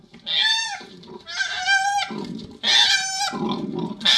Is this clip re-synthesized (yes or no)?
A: no